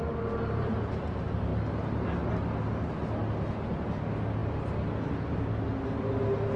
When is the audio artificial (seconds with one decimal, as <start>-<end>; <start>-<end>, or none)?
none